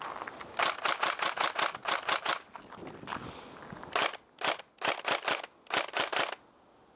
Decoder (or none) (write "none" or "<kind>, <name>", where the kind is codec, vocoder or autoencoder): none